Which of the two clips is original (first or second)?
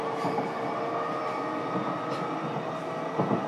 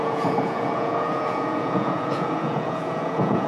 first